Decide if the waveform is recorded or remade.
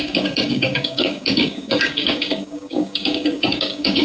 remade